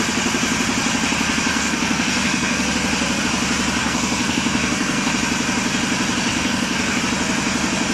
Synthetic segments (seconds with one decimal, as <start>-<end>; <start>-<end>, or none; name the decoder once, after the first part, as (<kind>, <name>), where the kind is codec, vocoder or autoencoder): 1.5-2.7 (codec, SNAC); 3.8-5.1; 6.3-7.0